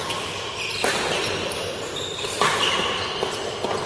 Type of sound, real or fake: real